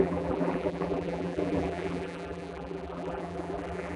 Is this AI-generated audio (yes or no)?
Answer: yes